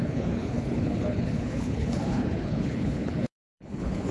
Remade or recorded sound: remade